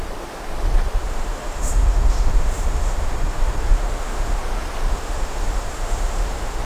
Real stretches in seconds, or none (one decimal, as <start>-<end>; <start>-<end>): 0.0-1.0; 4.4-4.9